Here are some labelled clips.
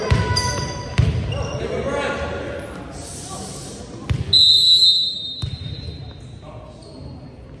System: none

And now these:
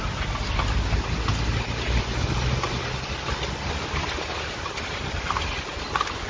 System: none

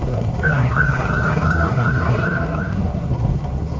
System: codec, SNAC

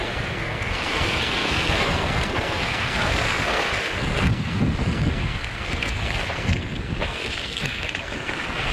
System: codec, SNAC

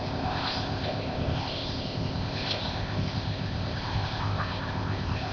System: codec, ZipCodec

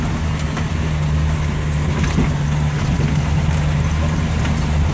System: none